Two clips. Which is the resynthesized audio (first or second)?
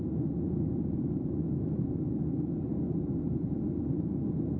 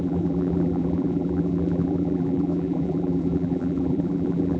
second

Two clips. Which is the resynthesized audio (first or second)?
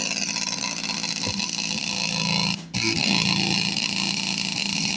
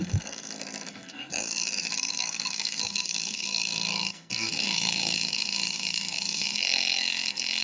second